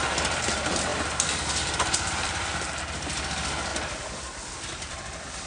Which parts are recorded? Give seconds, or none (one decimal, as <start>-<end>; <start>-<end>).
0.0-0.9; 2.3-3.7